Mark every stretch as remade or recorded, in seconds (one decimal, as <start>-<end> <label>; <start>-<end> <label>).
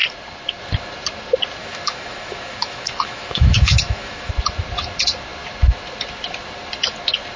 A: 0.0-1.6 recorded; 1.6-4.3 remade; 4.3-7.4 recorded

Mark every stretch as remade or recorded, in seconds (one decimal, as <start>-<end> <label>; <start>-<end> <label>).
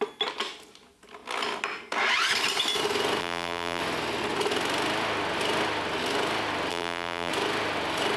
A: 0.0-3.2 recorded; 3.2-3.8 remade; 3.8-6.7 recorded; 6.7-7.3 remade; 7.3-8.2 recorded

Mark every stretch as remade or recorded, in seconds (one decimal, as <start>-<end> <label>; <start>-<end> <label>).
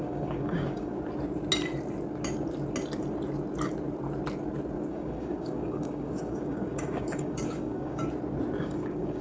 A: 0.0-0.9 remade; 0.9-4.9 recorded; 4.9-8.0 remade; 8.0-8.6 recorded; 8.6-9.2 remade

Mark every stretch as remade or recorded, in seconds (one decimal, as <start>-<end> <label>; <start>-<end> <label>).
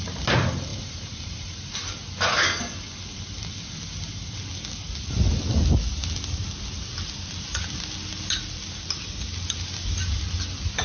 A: 0.0-0.7 recorded; 0.7-1.9 remade; 1.9-10.8 recorded